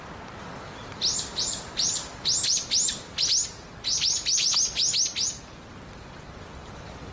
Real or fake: real